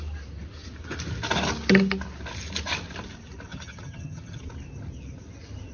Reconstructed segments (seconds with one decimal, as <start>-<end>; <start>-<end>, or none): 3.5-4.4